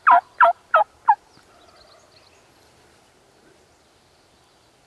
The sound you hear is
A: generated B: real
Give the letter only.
B